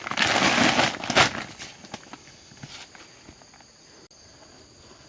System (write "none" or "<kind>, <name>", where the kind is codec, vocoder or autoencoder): none